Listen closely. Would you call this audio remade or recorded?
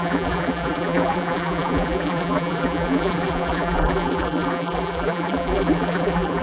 remade